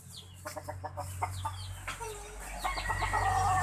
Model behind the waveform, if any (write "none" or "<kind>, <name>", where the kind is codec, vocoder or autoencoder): none